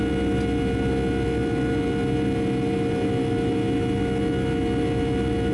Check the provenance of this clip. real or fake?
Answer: real